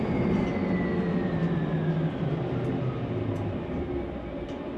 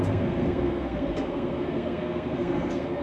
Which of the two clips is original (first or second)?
first